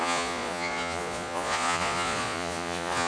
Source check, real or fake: fake